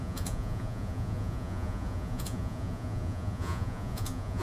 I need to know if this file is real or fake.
fake